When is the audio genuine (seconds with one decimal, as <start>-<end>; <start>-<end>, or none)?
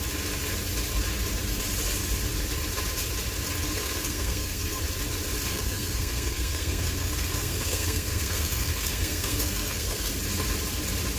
0.0-3.6; 4.8-5.5; 10.1-11.2